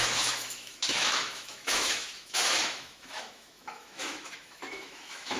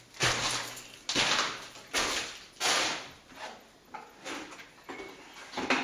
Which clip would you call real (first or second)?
second